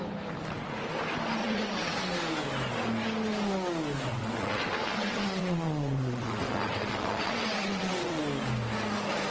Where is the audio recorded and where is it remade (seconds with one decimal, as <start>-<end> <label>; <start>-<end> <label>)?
0.0-1.4 recorded; 1.4-2.0 remade; 2.0-4.1 recorded; 4.1-8.2 remade; 8.2-9.3 recorded